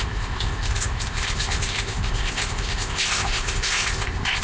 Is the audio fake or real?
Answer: fake